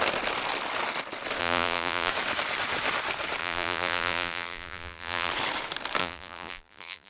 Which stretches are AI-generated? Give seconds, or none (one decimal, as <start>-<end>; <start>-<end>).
1.4-2.1; 3.4-5.3; 6.0-7.1